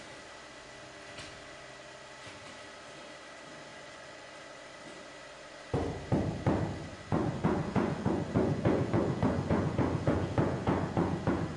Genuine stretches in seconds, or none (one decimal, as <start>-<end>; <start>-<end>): 0.0-3.7; 4.3-6.9